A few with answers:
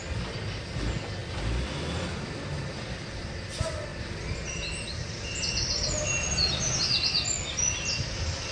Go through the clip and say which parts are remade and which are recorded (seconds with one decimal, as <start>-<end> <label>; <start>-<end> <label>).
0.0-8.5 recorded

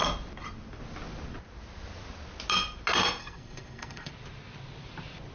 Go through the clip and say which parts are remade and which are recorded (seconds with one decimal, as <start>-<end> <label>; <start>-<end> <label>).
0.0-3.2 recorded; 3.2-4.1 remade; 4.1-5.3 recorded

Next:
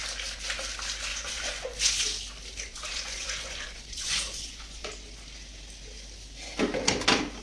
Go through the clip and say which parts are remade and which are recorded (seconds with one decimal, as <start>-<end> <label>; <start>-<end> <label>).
0.0-1.1 recorded; 1.1-1.9 remade; 1.9-2.7 recorded; 2.7-4.9 remade; 4.9-7.4 recorded

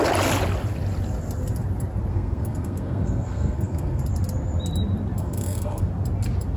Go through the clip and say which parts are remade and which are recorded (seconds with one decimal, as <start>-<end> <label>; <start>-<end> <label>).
0.0-2.1 recorded; 2.1-4.0 remade; 4.0-5.2 recorded; 5.2-5.9 remade; 5.9-6.6 recorded